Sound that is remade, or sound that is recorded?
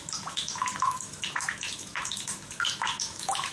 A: remade